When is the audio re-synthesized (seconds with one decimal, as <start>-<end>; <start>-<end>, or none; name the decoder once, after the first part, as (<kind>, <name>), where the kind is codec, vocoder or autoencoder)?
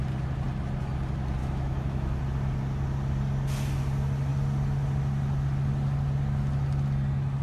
1.4-2.2 (autoencoder, DAC-VAE)